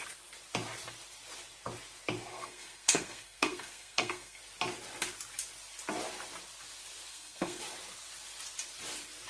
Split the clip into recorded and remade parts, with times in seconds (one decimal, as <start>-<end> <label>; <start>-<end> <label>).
0.0-2.3 recorded; 2.3-4.4 remade; 4.4-7.1 recorded; 7.1-7.6 remade; 7.6-9.3 recorded